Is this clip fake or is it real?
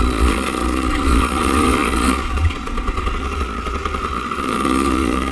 fake